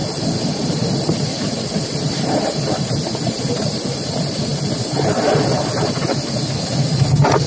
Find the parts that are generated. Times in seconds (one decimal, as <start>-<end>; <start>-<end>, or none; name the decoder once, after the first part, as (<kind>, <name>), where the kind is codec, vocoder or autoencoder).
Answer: 0.0-2.8 (vocoder, BigVGAN v2)